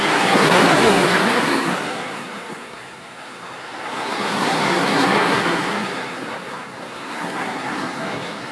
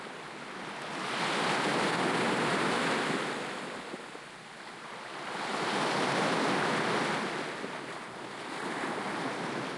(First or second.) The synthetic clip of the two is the first